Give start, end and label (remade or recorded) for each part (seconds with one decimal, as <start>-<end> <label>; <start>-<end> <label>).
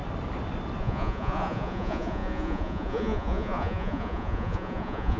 0.0-0.8 recorded; 0.8-5.2 remade